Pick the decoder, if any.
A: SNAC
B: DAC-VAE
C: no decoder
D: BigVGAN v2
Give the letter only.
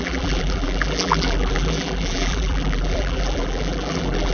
D